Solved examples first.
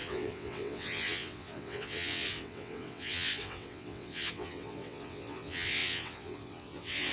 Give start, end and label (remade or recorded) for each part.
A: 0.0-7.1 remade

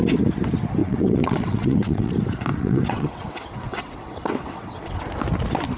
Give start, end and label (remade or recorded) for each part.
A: 0.0-0.8 recorded; 0.8-2.1 remade; 2.1-2.5 recorded; 2.5-5.0 remade; 5.0-5.8 recorded

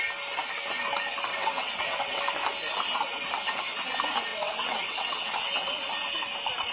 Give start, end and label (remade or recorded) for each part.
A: 0.0-1.3 recorded; 1.3-2.2 remade; 2.2-4.3 recorded; 4.3-5.9 remade; 5.9-6.7 recorded

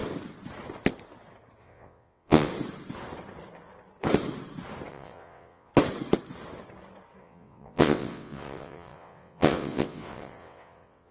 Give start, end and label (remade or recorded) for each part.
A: 0.0-1.6 recorded; 1.6-2.5 remade; 2.5-4.9 recorded; 4.9-5.7 remade; 5.7-7.2 recorded; 7.2-11.1 remade

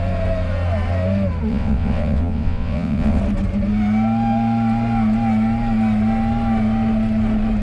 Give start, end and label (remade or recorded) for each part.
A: 0.0-1.5 recorded; 1.5-3.2 remade; 3.2-7.6 recorded

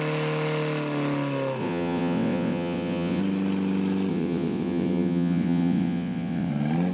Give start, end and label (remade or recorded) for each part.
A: 0.0-1.6 recorded; 1.6-3.2 remade; 3.2-4.1 recorded; 4.1-6.5 remade; 6.5-6.9 recorded

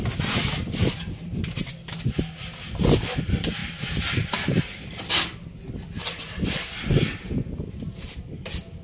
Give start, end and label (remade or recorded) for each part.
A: 0.0-8.8 recorded